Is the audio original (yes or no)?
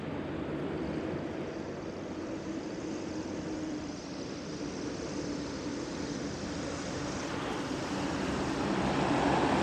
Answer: yes